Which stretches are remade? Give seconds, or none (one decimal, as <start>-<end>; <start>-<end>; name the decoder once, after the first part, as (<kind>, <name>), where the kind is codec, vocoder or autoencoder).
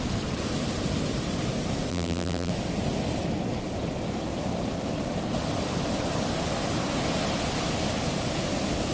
1.9-2.5 (vocoder, BigVGAN v2)